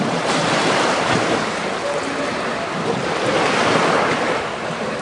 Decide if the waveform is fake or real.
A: real